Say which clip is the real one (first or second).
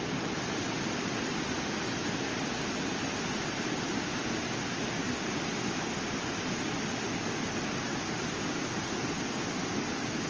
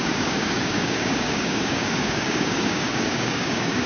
first